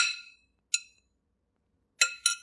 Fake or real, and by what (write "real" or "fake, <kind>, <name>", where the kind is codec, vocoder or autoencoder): real